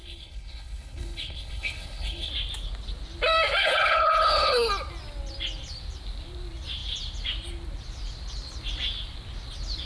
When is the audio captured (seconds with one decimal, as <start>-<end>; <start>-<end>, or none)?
2.3-3.6; 4.7-9.9